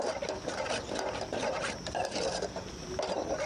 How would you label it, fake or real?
real